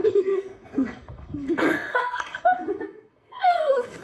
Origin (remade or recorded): remade